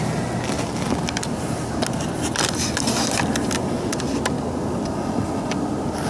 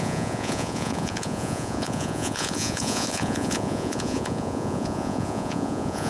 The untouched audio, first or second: first